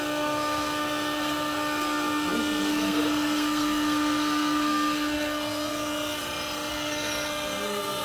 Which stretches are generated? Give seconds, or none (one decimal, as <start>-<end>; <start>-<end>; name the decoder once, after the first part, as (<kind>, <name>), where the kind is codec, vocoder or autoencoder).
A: 0.0-6.2 (codec, SNAC); 6.7-8.0